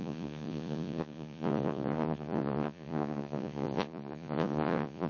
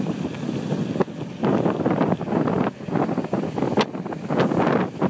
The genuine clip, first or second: second